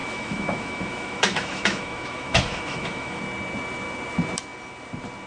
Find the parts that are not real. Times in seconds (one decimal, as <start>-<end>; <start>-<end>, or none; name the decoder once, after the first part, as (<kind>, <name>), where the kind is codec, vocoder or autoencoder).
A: 0.0-3.2 (autoencoder, DAC-VAE)